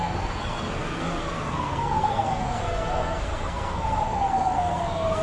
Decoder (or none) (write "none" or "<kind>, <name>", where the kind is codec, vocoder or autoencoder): codec, SNAC